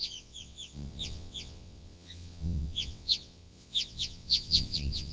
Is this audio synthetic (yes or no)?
yes